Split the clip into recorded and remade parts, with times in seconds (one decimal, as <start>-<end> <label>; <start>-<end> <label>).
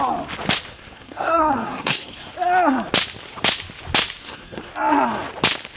0.0-0.7 recorded; 0.7-2.3 remade; 2.3-4.2 recorded; 4.2-4.7 remade; 4.7-5.8 recorded